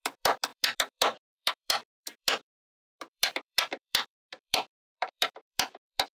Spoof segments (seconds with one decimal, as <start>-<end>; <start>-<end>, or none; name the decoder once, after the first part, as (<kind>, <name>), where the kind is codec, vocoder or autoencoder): 0.0-6.2 (vocoder, BigVGAN v2)